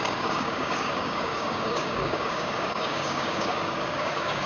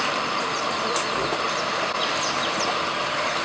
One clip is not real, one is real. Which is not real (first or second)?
first